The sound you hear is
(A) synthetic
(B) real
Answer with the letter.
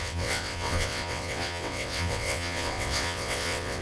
A